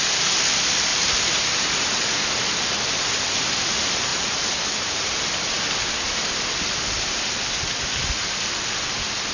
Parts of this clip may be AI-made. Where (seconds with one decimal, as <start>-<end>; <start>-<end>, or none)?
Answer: 0.9-2.1; 4.1-5.2